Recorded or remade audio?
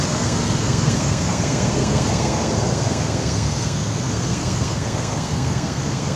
remade